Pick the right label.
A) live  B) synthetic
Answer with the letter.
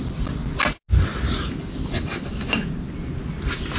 A